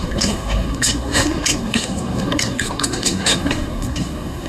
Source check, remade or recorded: remade